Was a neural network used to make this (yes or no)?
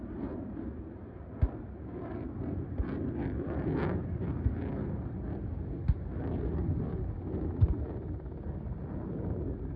no